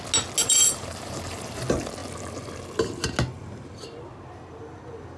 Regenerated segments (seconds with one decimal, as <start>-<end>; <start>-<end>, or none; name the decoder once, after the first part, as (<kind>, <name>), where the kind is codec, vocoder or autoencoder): 0.4-1.6 (vocoder, BigVGAN v2)